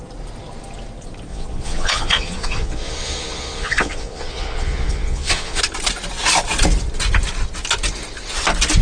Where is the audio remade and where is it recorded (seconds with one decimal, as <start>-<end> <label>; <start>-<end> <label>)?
0.0-1.3 recorded; 1.3-5.6 remade; 5.6-8.8 recorded